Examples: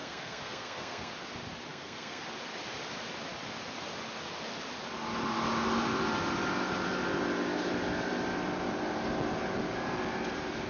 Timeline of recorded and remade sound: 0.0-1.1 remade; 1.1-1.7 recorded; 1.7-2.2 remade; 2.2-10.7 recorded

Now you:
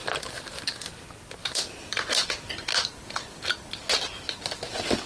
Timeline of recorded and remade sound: 0.0-0.5 remade; 0.5-1.4 recorded; 1.4-3.7 remade; 3.7-5.1 recorded

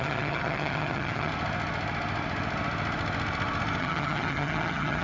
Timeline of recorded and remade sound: 0.0-1.3 remade; 1.3-3.8 recorded; 3.8-5.0 remade

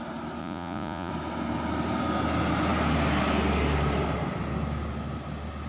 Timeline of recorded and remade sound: 0.0-0.4 recorded; 0.4-1.1 remade; 1.1-5.7 recorded

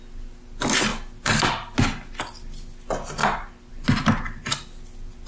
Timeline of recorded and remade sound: 0.0-5.3 recorded

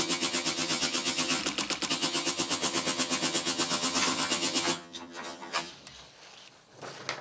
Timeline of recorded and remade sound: 0.0-1.4 remade; 1.4-1.9 recorded; 1.9-5.7 remade; 5.7-7.2 recorded

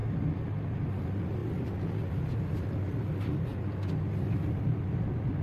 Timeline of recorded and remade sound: 0.0-5.4 remade